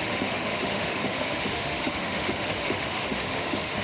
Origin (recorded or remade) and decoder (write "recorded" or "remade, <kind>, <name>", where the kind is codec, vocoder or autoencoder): remade, autoencoder, DAC-VAE